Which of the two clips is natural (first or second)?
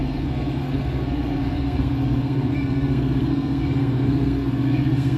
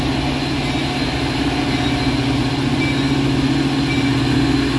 second